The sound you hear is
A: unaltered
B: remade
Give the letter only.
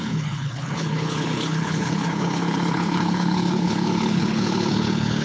B